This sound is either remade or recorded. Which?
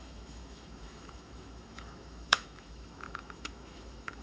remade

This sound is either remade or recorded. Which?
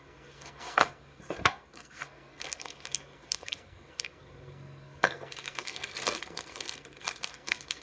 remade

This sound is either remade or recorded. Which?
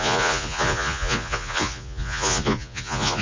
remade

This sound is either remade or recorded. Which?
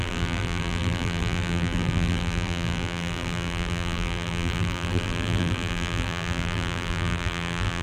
remade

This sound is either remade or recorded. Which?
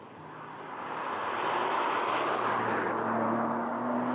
recorded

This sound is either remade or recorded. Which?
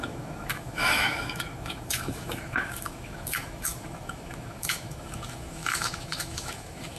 remade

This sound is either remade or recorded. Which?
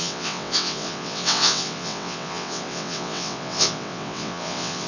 remade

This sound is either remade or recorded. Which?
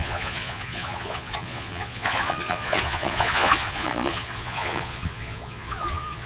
remade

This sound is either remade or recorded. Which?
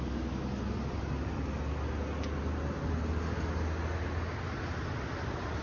recorded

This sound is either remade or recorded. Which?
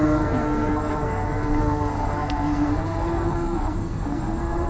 remade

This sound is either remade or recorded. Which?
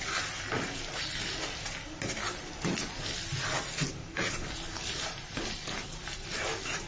recorded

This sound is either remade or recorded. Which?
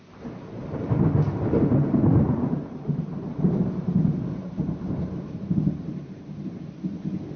remade